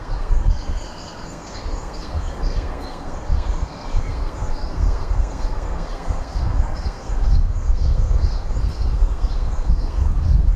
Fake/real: fake